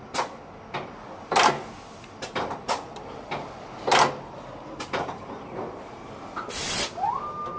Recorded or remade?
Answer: recorded